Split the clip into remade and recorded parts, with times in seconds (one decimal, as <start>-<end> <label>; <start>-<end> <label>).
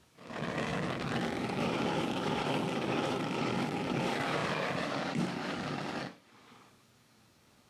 0.0-7.7 remade